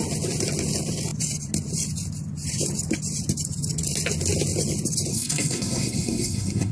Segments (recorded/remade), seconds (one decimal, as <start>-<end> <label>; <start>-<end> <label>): 0.0-5.1 recorded; 5.1-6.7 remade